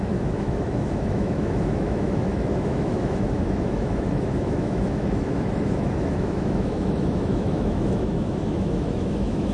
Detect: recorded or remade remade